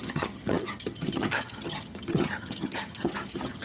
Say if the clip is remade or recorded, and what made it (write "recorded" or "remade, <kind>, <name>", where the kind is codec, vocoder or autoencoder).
remade, vocoder, HiFi-GAN